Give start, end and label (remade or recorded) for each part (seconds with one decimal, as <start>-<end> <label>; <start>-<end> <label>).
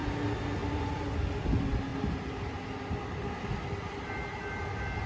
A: 0.0-5.1 recorded